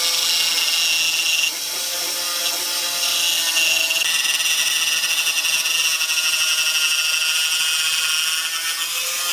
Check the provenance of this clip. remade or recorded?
recorded